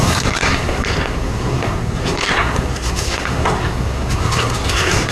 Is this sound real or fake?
fake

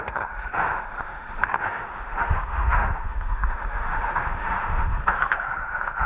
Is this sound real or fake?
fake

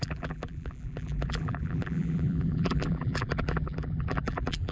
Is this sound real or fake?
fake